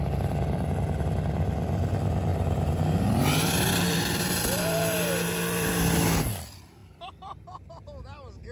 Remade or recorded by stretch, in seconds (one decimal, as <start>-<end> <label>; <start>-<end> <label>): 0.0-2.3 recorded; 2.3-5.8 remade; 5.8-8.5 recorded